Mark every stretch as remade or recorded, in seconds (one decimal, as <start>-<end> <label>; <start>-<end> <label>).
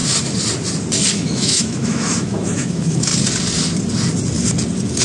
0.0-1.1 recorded; 1.1-3.1 remade; 3.1-5.0 recorded